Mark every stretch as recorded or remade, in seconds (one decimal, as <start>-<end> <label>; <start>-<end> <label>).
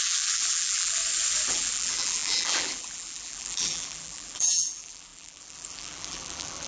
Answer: 0.0-1.0 remade; 1.0-1.5 recorded; 1.5-6.7 remade